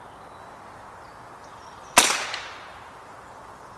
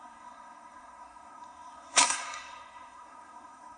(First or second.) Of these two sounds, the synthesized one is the second